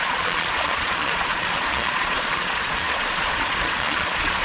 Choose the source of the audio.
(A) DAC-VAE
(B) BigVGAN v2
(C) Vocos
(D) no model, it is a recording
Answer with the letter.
C